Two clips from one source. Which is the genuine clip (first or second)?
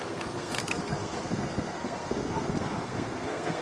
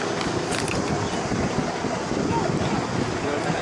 second